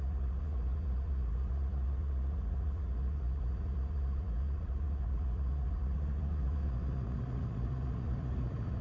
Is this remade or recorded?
remade